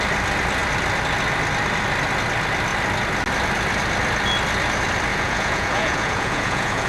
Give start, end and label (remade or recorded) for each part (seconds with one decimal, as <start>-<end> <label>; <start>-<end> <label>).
0.0-5.1 recorded; 5.1-6.9 remade